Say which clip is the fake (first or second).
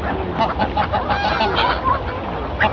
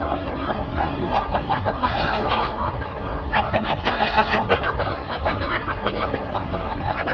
second